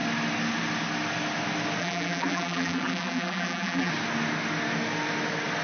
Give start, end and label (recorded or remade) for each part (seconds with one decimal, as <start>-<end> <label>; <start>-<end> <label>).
0.0-1.8 recorded; 1.8-3.9 remade; 3.9-5.6 recorded